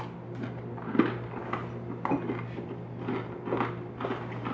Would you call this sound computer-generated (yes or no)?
no